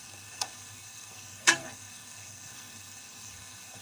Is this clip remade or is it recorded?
remade